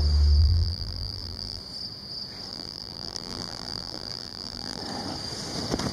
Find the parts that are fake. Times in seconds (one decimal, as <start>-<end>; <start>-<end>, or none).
0.4-1.6; 2.5-4.8